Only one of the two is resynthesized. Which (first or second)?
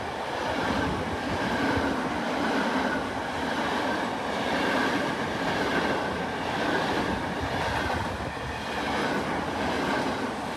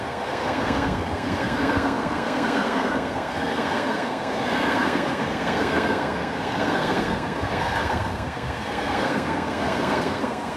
second